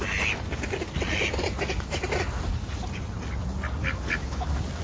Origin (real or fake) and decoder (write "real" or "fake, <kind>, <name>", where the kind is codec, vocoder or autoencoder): real